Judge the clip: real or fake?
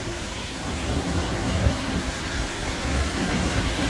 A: fake